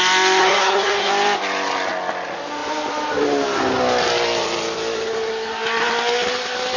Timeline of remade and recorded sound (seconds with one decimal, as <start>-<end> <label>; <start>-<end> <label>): 0.0-0.4 recorded; 0.4-1.1 remade; 1.1-6.8 recorded